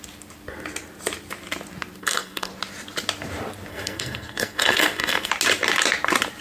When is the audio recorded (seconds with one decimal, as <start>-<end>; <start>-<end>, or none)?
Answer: 0.0-2.0; 2.5-3.7; 5.3-6.4